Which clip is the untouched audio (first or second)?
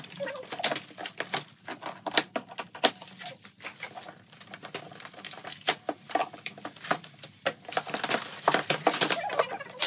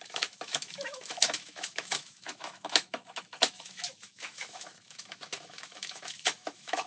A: first